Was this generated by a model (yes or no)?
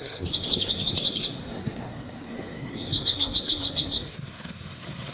yes